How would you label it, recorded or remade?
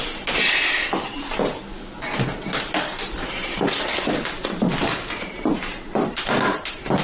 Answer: remade